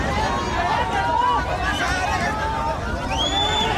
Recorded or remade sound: recorded